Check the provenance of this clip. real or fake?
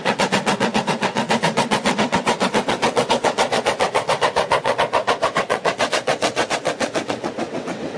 fake